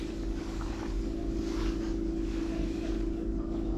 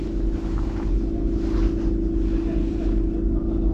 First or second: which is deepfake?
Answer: first